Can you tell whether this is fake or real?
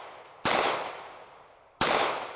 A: real